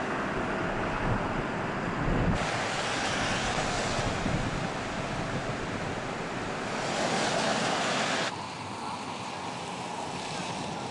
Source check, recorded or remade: recorded